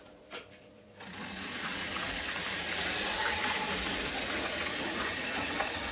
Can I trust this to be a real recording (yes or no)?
no